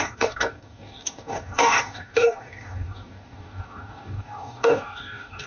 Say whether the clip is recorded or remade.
remade